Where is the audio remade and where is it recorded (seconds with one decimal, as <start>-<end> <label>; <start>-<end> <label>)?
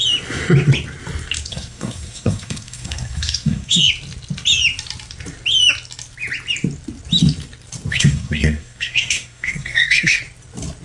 0.0-1.5 recorded; 1.5-3.9 remade; 3.9-7.9 recorded; 7.9-10.2 remade; 10.2-10.8 recorded